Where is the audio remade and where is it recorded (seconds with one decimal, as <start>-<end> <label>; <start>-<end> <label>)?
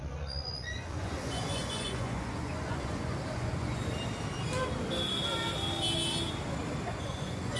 0.0-3.8 remade; 3.8-6.9 recorded; 6.9-7.6 remade